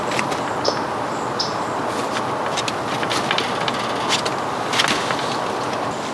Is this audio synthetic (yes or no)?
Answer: no